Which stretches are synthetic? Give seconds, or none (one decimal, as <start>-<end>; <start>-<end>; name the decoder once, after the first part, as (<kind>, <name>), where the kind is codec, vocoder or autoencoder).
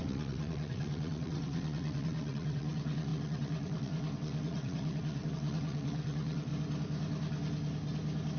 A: 0.0-6.5 (vocoder, WaveNeXt)